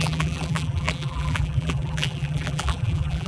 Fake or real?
fake